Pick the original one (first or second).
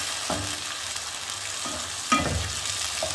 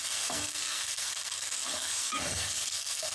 first